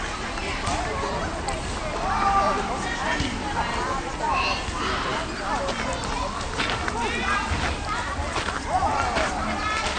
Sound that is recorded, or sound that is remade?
recorded